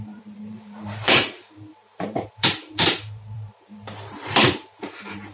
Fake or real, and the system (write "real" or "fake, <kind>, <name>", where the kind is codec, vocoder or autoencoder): fake, vocoder, BigVGAN v2